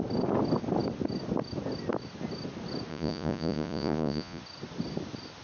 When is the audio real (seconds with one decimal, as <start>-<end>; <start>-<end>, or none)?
0.0-2.9; 4.4-5.4